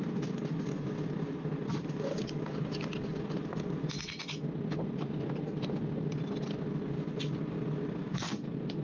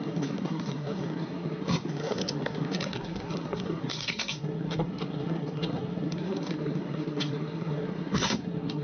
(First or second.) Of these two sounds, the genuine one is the first